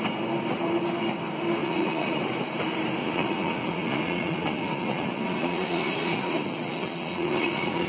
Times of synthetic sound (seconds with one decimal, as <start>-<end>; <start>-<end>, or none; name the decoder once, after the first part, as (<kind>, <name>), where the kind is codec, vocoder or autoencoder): 1.6-2.2 (vocoder, Vocos); 3.0-7.9